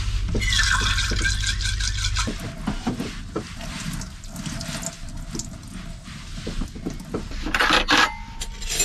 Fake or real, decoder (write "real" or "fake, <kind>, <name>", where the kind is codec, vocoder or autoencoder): real